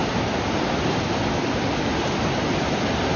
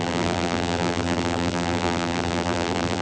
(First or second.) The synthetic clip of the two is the second